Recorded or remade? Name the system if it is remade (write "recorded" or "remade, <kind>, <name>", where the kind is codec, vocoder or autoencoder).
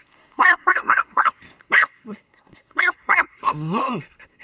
remade, codec, SNAC